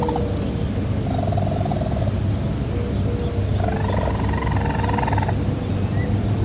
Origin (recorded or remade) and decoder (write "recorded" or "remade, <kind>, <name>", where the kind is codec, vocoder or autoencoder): recorded